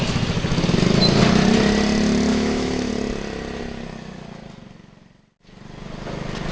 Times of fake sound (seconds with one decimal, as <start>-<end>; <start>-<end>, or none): 2.3-2.9